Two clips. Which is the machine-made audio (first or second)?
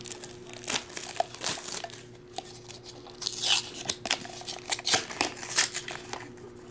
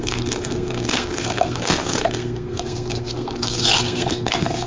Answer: second